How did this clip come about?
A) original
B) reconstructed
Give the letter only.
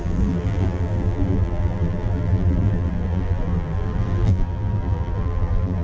B